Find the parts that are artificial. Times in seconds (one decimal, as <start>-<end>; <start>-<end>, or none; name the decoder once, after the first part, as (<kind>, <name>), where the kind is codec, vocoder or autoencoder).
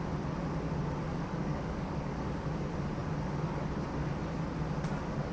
1.1-2.4 (codec, DAC)